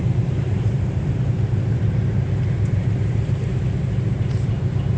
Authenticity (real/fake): fake